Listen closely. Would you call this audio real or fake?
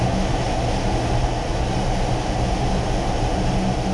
real